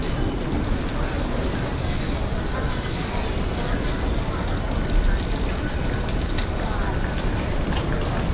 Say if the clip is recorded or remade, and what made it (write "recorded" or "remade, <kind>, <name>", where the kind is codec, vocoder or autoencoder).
recorded